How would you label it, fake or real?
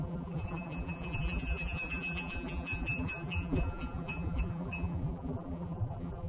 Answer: fake